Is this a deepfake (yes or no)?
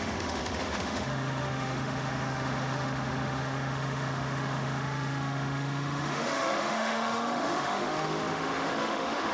yes